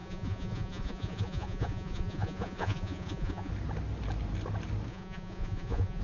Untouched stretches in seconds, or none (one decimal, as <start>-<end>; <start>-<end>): 3.5-4.9